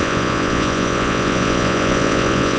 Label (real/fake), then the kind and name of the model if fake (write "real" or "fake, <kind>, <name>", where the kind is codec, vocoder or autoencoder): fake, vocoder, Vocos